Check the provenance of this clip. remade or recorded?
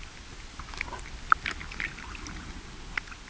recorded